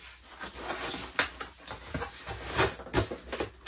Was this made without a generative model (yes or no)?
yes